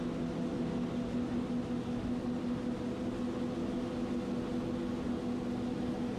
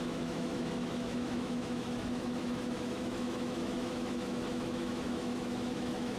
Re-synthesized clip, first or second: second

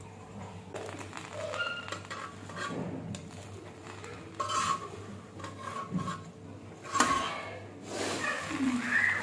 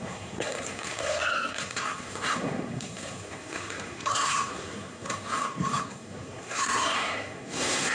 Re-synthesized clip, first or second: second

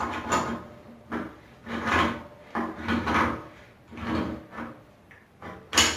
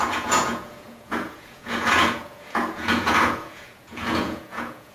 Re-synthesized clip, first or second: second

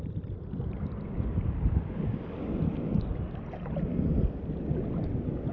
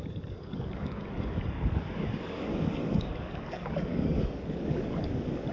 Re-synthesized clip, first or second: second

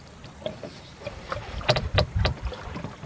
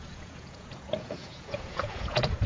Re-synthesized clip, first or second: second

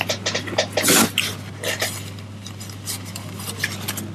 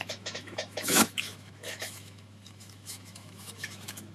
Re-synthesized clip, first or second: second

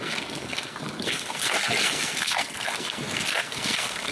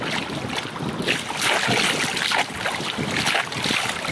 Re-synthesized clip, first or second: first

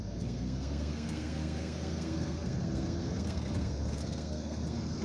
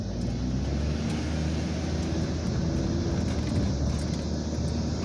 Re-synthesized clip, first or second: first